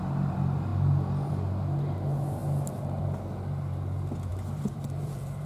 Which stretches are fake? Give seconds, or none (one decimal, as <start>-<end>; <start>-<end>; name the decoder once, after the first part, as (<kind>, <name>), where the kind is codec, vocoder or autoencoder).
4.3-5.5 (vocoder, BigVGAN v2)